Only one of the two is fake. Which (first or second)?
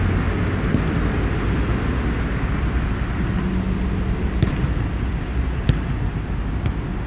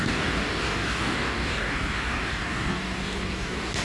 second